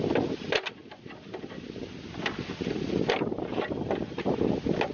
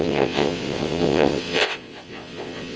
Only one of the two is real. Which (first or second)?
first